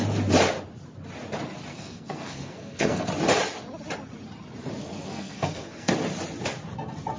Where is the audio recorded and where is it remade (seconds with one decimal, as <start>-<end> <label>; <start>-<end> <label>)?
0.0-1.7 recorded; 1.7-3.1 remade; 3.1-4.8 recorded; 4.8-5.9 remade; 5.9-7.2 recorded